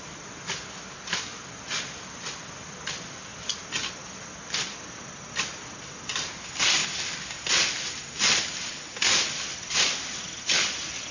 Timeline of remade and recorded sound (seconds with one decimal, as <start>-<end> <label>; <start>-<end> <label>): 0.0-11.1 recorded

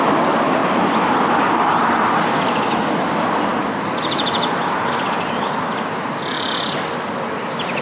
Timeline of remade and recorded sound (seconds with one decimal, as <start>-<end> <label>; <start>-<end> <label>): 0.0-7.8 recorded

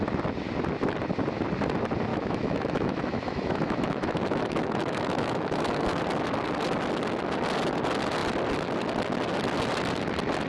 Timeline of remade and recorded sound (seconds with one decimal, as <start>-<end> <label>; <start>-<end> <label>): 0.0-2.1 recorded; 2.1-6.0 remade; 6.0-10.5 recorded

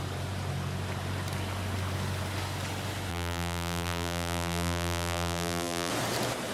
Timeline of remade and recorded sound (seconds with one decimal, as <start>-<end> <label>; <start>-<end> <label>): 0.0-3.1 recorded; 3.1-5.9 remade; 5.9-6.5 recorded

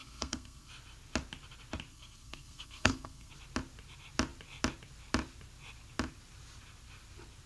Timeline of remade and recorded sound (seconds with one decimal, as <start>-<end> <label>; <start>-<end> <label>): 0.0-0.7 remade; 0.7-1.9 recorded; 1.9-3.3 remade; 3.3-7.5 recorded

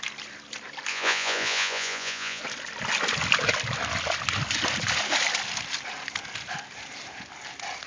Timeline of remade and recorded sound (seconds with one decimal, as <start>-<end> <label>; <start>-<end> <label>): 0.0-0.9 recorded; 0.9-2.4 remade; 2.4-7.9 recorded

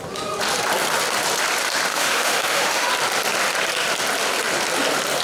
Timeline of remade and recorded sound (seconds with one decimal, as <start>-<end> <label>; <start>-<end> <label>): 0.0-1.9 recorded; 1.9-2.9 remade; 2.9-5.2 recorded